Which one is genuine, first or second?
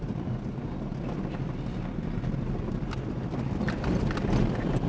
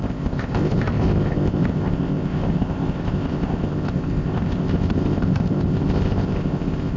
first